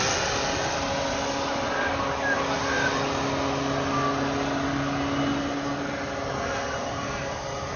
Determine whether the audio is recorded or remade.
recorded